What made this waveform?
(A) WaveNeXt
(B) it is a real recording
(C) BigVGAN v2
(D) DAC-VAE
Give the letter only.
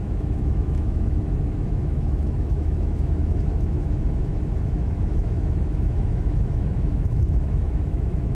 D